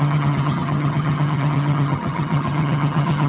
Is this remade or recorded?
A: remade